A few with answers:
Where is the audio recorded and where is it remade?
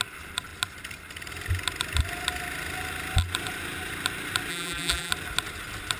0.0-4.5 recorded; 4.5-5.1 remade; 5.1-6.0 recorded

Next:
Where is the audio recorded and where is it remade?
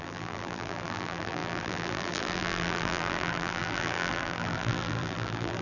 0.0-5.6 remade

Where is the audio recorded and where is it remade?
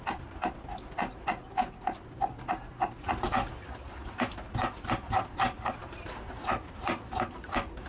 0.0-1.1 recorded; 1.1-2.3 remade; 2.3-5.8 recorded; 5.8-7.9 remade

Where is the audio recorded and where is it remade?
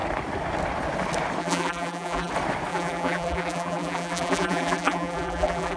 0.0-1.4 recorded; 1.4-2.3 remade; 2.3-2.7 recorded; 2.7-5.8 remade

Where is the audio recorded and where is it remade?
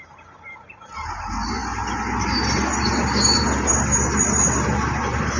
0.0-5.4 recorded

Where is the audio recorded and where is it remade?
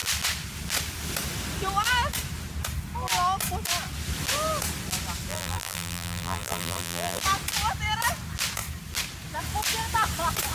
0.0-5.3 recorded; 5.3-7.2 remade; 7.2-10.5 recorded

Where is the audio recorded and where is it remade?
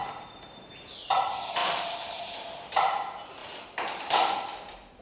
0.0-1.6 recorded; 1.6-2.2 remade; 2.2-3.4 recorded; 3.4-5.0 remade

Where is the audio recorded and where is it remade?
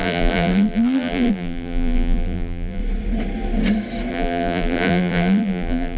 0.0-2.8 remade; 2.8-4.1 recorded; 4.1-6.0 remade